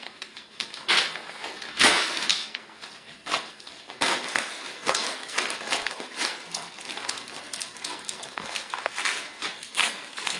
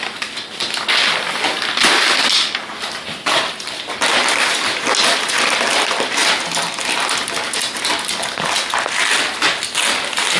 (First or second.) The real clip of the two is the second